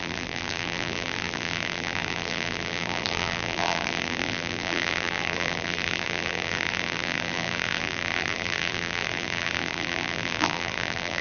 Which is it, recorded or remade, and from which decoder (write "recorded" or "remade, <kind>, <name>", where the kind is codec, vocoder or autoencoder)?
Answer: remade, vocoder, BigVGAN v2